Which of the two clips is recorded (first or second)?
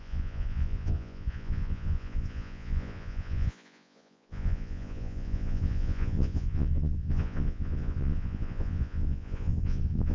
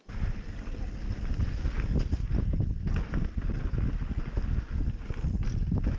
second